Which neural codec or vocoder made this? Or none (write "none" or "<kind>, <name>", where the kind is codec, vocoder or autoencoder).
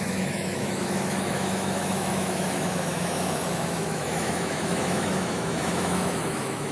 autoencoder, DAC-VAE